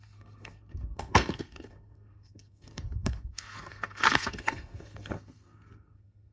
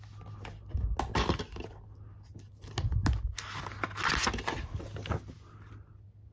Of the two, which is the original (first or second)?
second